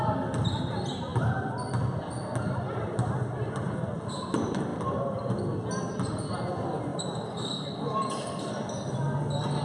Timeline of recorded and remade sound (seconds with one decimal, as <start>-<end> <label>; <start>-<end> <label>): 0.0-6.9 recorded; 6.9-8.5 remade; 8.5-9.6 recorded